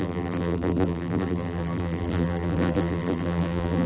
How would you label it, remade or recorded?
remade